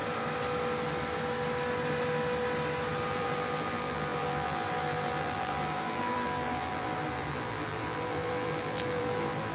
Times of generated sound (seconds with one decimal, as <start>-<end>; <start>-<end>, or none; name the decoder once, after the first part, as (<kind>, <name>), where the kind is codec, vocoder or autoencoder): 3.1-9.5 (vocoder, BigVGAN v2)